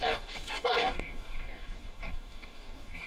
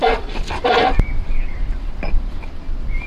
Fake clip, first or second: first